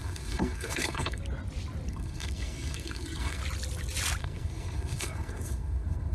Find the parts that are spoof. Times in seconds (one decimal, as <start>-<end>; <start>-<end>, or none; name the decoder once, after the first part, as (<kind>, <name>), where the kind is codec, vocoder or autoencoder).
0.0-1.2 (codec, SNAC); 1.9-3.4; 4.2-6.1